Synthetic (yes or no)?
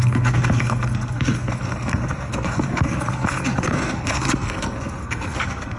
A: yes